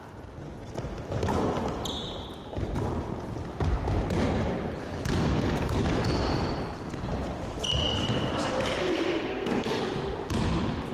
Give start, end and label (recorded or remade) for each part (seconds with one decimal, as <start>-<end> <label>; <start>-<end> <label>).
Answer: 0.0-5.1 recorded; 5.1-5.8 remade; 5.8-8.8 recorded; 8.8-9.8 remade; 9.8-10.9 recorded